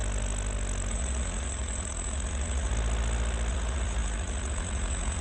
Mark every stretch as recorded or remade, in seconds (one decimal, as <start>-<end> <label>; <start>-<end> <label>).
0.0-0.9 recorded; 0.9-2.7 remade; 2.7-3.5 recorded; 3.5-5.2 remade